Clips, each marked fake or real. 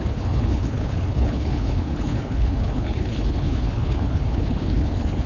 fake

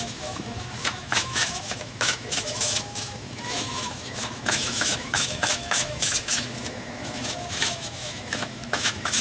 fake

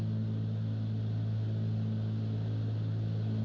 real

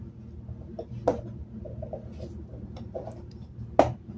real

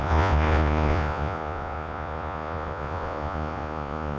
fake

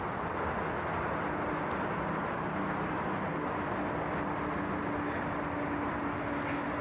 real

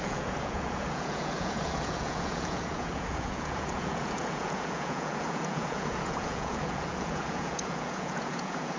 fake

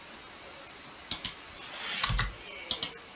real